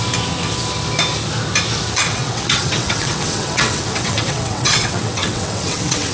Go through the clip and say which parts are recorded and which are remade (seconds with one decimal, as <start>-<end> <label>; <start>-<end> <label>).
0.0-2.1 recorded; 2.1-6.1 remade